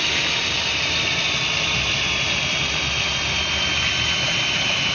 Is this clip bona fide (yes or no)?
yes